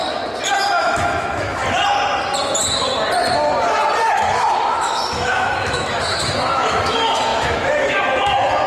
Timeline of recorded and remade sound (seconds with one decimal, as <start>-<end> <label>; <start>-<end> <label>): 0.0-0.5 recorded; 0.5-1.6 remade; 1.6-4.1 recorded; 4.1-8.7 remade